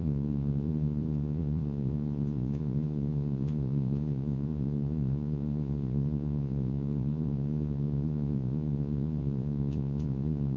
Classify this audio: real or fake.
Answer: fake